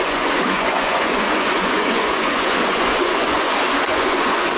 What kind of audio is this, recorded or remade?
remade